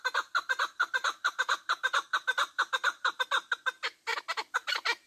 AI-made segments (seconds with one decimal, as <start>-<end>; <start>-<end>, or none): 1.0-3.2; 4.1-5.1